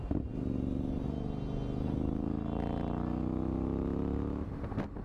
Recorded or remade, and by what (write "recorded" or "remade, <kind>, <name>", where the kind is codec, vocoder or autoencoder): recorded